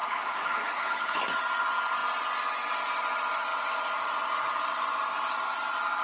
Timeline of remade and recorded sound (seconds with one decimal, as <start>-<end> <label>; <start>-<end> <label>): 0.0-1.2 remade; 1.2-6.0 recorded